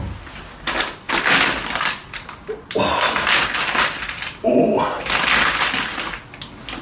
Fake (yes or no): no